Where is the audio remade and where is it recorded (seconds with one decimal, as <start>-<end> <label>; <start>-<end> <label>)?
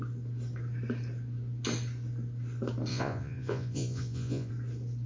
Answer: 0.0-2.9 recorded; 2.9-4.5 remade; 4.5-5.1 recorded